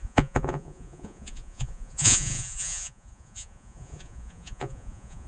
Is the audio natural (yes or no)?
no